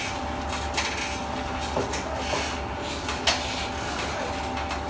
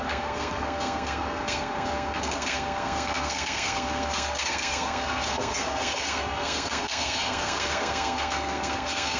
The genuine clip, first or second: first